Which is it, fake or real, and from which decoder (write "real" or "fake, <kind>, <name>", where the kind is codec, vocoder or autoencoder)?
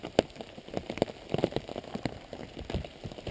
real